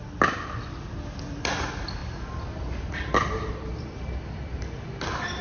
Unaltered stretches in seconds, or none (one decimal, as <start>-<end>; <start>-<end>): 0.0-5.4